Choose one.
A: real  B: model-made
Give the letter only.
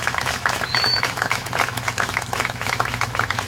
B